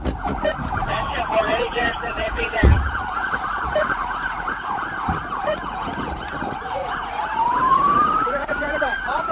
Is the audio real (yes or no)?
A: no